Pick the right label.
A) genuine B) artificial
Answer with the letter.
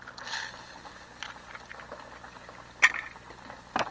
A